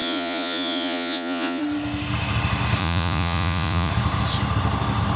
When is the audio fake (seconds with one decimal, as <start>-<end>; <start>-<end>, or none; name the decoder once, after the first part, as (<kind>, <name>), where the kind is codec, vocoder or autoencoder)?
0.0-1.6 (vocoder, Vocos); 2.8-3.9